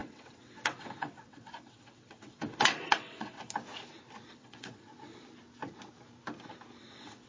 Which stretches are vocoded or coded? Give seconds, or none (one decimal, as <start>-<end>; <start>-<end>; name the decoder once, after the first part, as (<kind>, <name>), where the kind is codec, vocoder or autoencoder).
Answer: 0.0-3.4 (vocoder, WaveNeXt); 4.3-4.9; 6.8-7.3